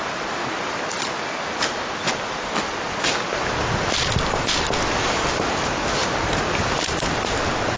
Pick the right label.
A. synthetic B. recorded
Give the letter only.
B